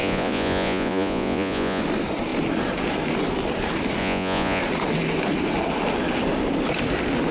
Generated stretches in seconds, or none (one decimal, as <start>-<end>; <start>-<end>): 0.0-1.8; 4.0-4.6